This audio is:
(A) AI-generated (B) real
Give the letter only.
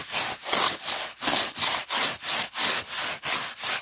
B